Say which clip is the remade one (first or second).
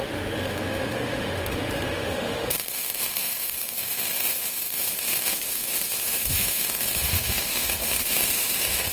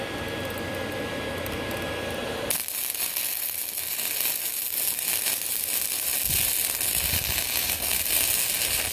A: first